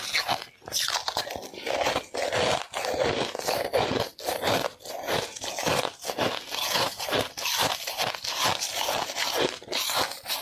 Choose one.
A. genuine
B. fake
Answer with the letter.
A